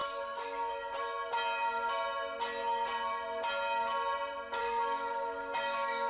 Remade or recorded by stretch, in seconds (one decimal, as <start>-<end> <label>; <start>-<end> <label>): 0.0-0.7 remade; 0.7-4.6 recorded; 4.6-6.1 remade